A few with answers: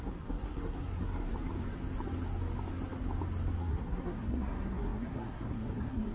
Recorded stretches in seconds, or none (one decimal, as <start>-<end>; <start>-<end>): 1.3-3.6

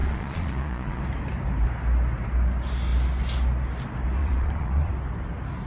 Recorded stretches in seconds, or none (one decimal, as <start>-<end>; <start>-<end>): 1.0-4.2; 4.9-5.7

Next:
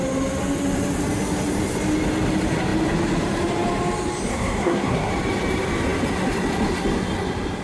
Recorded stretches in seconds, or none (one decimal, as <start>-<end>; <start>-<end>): 0.0-4.3; 5.1-7.6

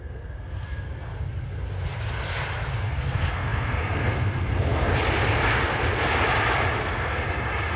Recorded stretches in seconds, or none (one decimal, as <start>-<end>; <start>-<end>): 1.1-2.8; 4.9-6.8; 7.2-7.8